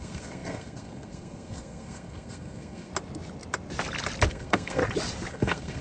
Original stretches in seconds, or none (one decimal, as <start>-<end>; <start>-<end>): 2.9-4.3; 4.8-5.3